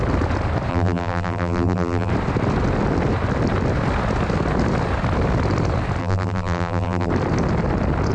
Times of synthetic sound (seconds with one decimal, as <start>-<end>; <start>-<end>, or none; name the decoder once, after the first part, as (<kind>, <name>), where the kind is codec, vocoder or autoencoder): 0.7-2.1 (vocoder, BigVGAN v2); 6.0-7.1